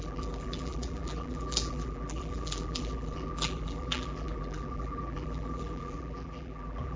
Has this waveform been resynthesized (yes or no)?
yes